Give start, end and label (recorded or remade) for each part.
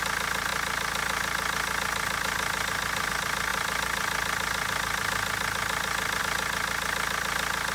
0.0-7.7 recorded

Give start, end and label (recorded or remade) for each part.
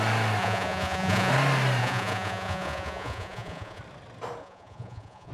0.0-0.4 recorded; 0.4-1.3 remade; 1.3-1.8 recorded; 1.8-3.8 remade; 3.8-4.4 recorded; 4.4-5.3 remade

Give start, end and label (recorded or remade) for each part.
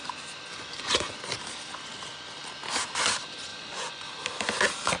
0.0-0.5 recorded; 0.5-1.2 remade; 1.2-3.5 recorded; 3.5-4.1 remade; 4.1-5.0 recorded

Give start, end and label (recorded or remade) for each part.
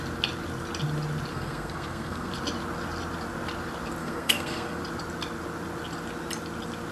0.0-1.3 recorded; 1.3-2.3 remade; 2.3-4.0 recorded; 4.0-4.8 remade; 4.8-6.9 recorded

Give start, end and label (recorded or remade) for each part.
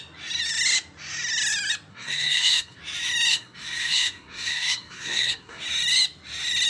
0.0-1.9 recorded; 1.9-2.8 remade; 2.8-3.3 recorded; 3.3-5.6 remade; 5.6-6.7 recorded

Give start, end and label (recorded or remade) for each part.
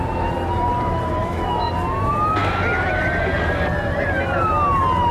0.0-1.2 recorded; 1.2-1.7 remade; 1.7-5.1 recorded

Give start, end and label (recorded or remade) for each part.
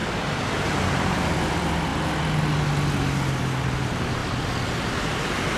0.0-5.6 recorded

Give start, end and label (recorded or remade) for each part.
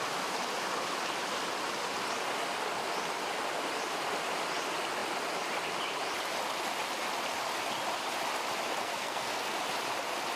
0.0-8.8 recorded; 8.8-9.5 remade; 9.5-10.4 recorded